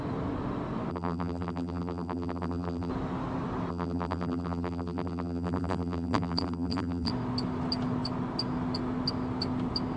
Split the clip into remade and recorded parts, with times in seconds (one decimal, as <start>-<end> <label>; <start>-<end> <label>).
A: 0.0-0.9 recorded; 0.9-2.9 remade; 2.9-3.7 recorded; 3.7-7.1 remade; 7.1-10.0 recorded